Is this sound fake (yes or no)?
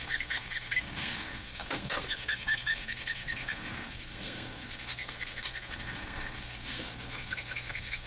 yes